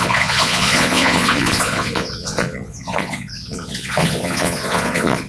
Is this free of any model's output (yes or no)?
no